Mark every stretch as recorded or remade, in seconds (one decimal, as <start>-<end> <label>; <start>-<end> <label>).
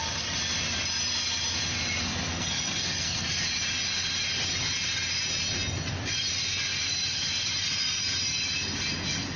0.0-2.3 recorded; 2.3-3.3 remade; 3.3-9.4 recorded